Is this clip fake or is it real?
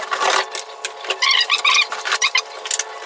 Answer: real